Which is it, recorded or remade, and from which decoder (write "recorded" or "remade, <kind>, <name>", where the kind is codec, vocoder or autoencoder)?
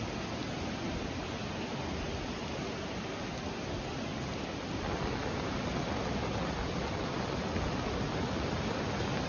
recorded